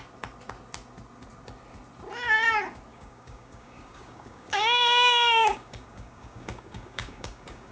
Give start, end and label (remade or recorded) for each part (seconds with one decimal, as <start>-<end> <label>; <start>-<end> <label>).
0.0-2.9 recorded; 2.9-7.7 remade